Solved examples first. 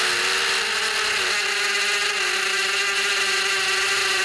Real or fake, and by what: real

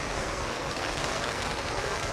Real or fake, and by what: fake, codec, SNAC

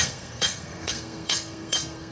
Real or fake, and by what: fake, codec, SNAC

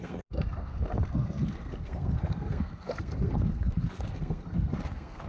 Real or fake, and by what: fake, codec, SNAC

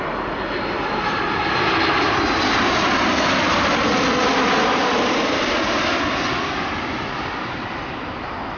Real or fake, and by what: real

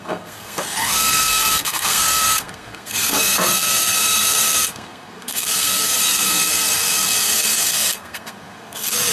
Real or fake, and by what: fake, codec, SNAC